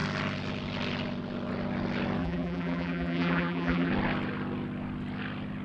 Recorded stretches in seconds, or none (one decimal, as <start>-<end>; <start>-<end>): 0.0-2.2; 3.9-5.6